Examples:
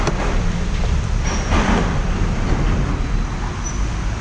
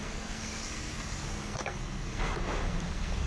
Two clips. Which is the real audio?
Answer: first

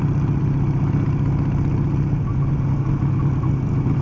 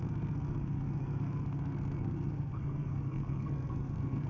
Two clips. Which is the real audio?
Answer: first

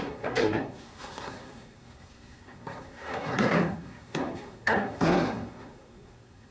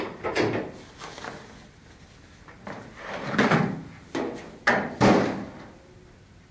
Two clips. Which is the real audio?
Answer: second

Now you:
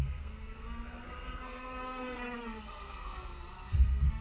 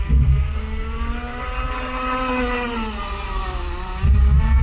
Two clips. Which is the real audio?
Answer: second